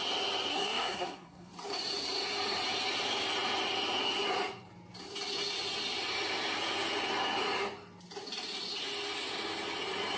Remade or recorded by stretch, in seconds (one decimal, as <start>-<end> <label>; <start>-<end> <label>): 0.0-0.5 recorded; 0.5-1.5 remade; 1.5-10.2 recorded